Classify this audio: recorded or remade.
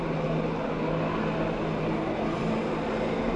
recorded